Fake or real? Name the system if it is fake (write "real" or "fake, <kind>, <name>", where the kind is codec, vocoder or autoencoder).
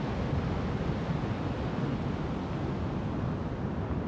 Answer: real